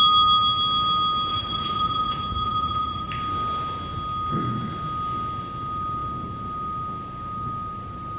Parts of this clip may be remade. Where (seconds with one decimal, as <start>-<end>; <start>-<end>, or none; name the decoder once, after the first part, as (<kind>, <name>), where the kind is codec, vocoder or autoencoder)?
1.3-3.1 (vocoder, Vocos)

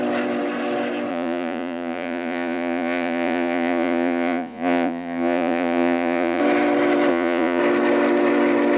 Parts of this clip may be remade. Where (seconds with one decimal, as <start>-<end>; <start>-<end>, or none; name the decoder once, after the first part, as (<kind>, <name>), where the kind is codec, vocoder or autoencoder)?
1.1-6.4 (vocoder, Vocos); 7.1-7.6

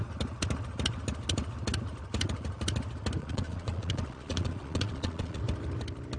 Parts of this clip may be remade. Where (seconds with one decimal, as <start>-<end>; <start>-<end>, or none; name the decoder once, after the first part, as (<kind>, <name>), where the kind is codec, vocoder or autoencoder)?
3.2-5.4 (vocoder, Vocos)

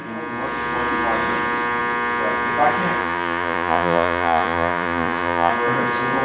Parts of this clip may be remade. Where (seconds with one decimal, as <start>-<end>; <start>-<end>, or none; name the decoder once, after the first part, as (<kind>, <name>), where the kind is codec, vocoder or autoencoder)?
3.0-5.5 (vocoder, Vocos)

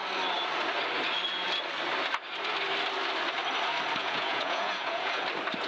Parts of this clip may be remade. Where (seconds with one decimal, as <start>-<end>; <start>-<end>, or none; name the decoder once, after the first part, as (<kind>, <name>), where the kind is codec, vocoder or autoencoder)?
4.0-5.2 (vocoder, Vocos)

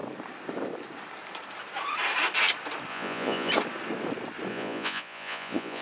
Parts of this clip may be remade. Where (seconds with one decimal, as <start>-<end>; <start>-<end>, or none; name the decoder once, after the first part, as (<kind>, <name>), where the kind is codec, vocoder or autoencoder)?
2.9-3.5 (vocoder, Vocos); 4.5-5.8

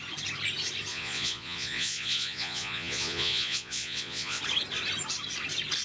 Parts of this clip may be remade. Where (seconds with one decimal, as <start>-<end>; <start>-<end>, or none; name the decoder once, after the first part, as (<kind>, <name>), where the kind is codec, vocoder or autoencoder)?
0.9-4.4 (vocoder, Vocos)